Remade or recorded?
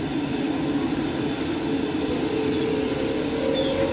recorded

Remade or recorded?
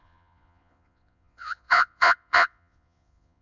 remade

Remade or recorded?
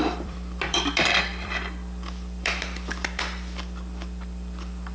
remade